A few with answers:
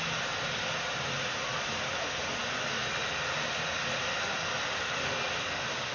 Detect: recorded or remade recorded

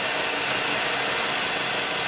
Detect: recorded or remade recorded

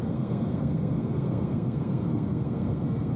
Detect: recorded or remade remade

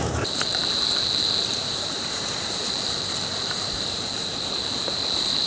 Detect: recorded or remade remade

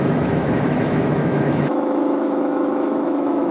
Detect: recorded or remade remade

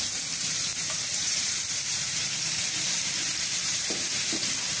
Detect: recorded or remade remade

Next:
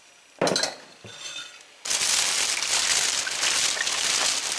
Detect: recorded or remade recorded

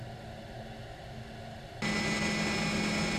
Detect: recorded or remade recorded